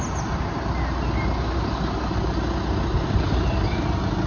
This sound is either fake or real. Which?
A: real